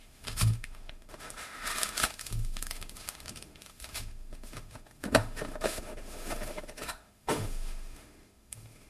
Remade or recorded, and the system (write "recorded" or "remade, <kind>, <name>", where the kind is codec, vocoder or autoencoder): remade, autoencoder, DAC-VAE